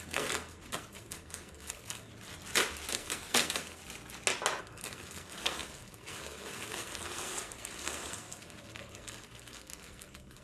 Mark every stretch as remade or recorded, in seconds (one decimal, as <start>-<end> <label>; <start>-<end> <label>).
0.0-2.1 remade; 2.1-2.9 recorded; 2.9-3.8 remade; 3.8-4.6 recorded; 4.6-10.4 remade